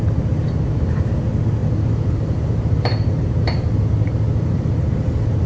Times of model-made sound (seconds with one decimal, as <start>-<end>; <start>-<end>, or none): 0.4-1.2; 1.6-4.9